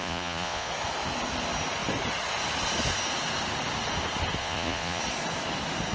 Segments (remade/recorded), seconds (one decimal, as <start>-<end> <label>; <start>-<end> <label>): 0.0-0.7 remade; 0.7-4.4 recorded; 4.4-5.0 remade; 5.0-5.9 recorded